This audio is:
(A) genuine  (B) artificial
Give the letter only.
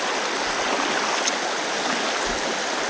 A